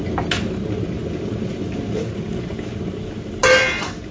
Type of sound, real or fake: real